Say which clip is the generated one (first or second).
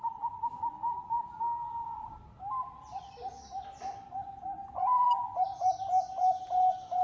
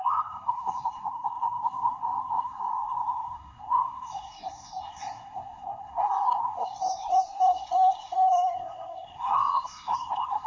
second